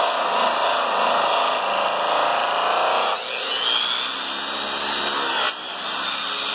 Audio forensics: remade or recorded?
recorded